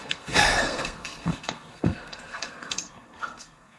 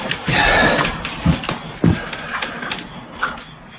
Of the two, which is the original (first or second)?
second